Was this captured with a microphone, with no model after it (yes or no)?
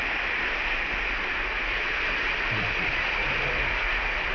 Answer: yes